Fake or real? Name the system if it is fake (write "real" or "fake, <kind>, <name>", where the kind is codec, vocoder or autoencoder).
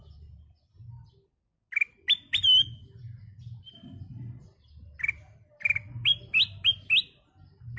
real